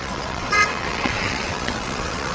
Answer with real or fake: fake